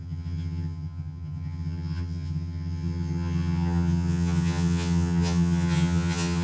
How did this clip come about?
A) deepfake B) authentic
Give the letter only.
A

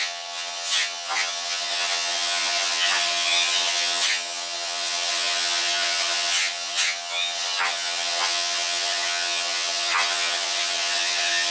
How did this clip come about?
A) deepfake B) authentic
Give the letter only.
A